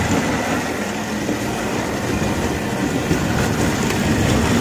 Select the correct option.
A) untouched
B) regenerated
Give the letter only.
A